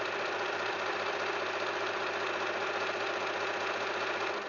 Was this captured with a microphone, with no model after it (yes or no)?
yes